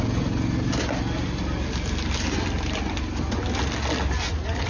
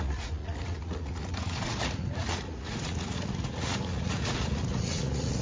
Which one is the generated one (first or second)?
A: second